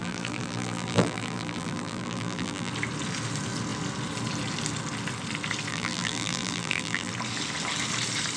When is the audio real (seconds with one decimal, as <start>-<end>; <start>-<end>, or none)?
2.7-5.7; 7.1-8.4